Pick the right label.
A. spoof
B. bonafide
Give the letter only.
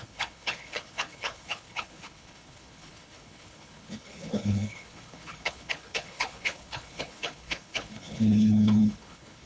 A